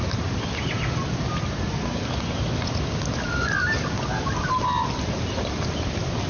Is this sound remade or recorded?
recorded